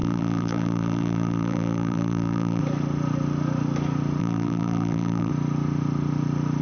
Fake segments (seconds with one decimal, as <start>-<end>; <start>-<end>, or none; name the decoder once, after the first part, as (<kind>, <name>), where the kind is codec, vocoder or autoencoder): 0.0-2.6 (vocoder, BigVGAN v2); 4.2-5.3